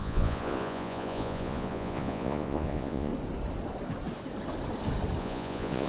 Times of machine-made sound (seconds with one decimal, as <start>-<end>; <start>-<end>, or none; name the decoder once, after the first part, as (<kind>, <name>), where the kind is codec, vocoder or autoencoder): 0.0-3.1 (vocoder, Vocos); 5.2-5.9